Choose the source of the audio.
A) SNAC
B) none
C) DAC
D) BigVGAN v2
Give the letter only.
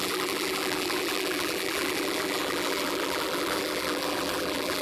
D